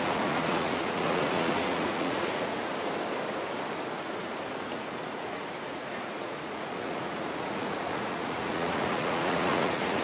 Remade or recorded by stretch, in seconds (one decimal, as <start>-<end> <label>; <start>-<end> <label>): 0.0-2.7 remade; 2.7-4.2 recorded; 4.2-10.0 remade